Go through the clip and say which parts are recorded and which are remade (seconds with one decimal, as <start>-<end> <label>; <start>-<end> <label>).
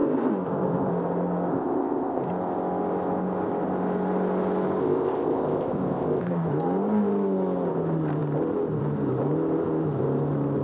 0.0-0.9 remade; 0.9-1.5 recorded; 1.5-2.3 remade; 2.3-4.8 recorded; 4.8-6.5 remade; 6.5-10.6 recorded